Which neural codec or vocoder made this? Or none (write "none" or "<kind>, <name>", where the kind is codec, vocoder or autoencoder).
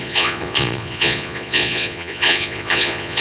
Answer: vocoder, Vocos